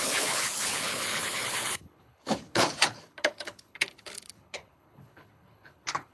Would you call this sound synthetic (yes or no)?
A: yes